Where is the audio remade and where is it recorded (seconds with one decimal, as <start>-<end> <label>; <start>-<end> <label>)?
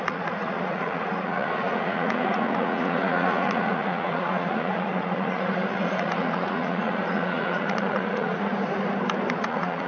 0.0-8.5 remade; 8.5-9.4 recorded; 9.4-9.9 remade